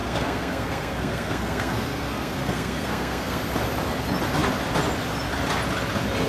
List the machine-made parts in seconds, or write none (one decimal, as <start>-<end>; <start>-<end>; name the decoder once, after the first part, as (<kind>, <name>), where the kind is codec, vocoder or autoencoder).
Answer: 0.0-3.4 (codec, SNAC)